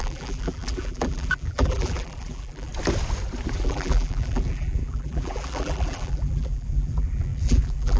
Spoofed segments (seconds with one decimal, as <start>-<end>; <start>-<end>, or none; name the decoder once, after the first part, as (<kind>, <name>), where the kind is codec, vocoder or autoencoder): 0.0-2.7 (vocoder, BigVGAN v2); 3.5-8.0